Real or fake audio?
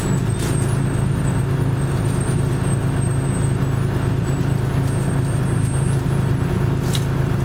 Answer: real